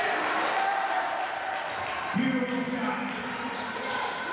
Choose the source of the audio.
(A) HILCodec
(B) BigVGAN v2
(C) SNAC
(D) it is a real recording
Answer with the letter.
D